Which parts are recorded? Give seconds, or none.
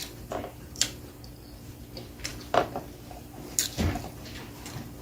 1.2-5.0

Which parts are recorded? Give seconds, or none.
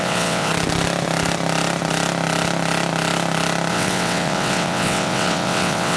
0.5-3.7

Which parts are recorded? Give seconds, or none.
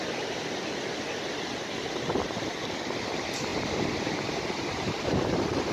0.0-3.5